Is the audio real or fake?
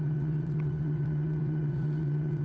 fake